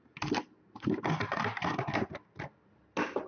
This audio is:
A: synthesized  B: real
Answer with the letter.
B